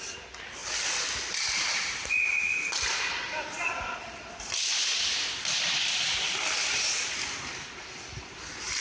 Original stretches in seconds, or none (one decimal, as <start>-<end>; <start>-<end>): 0.0-8.8